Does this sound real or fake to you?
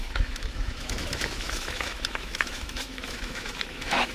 fake